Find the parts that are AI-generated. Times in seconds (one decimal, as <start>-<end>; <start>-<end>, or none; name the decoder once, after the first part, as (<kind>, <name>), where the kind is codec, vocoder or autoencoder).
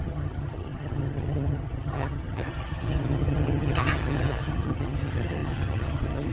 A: 0.0-6.3 (vocoder, HiFi-GAN)